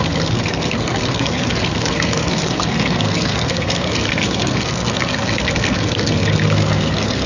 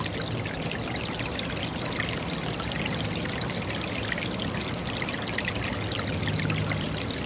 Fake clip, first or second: first